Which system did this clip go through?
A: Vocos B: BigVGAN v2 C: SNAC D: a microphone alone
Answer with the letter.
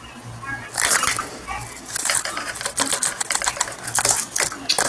D